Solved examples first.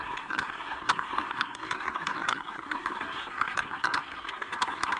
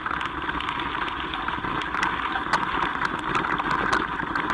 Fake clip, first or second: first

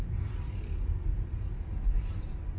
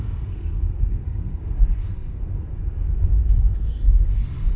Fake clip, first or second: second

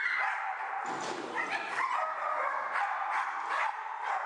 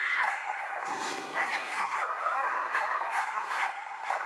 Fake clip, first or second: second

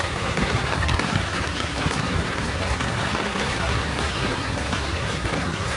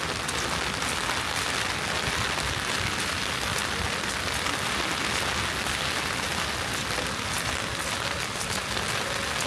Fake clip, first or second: first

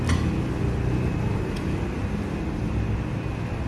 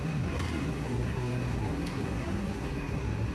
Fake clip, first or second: second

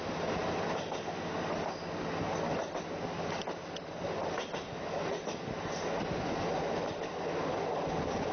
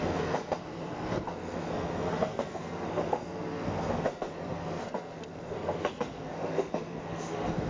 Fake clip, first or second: second